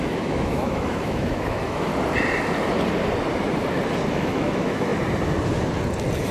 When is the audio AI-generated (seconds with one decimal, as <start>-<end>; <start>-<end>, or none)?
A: 0.0-1.9; 4.1-4.9